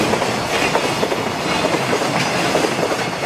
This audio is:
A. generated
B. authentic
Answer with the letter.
B